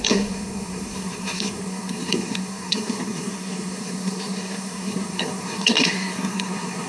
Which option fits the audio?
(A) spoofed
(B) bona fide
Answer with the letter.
A